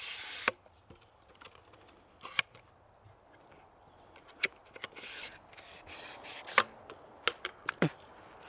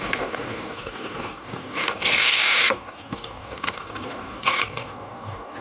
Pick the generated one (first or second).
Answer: second